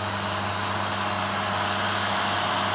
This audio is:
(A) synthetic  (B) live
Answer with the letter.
B